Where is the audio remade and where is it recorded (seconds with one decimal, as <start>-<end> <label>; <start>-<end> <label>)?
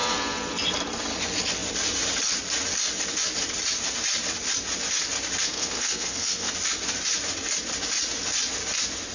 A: 0.0-5.4 recorded; 5.4-6.5 remade; 6.5-9.1 recorded